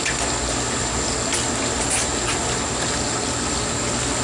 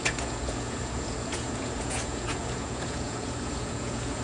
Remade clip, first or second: second